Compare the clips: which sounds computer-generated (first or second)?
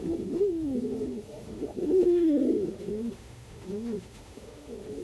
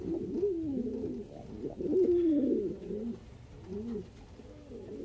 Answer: first